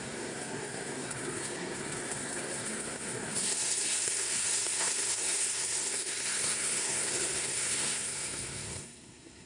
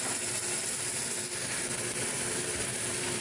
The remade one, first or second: first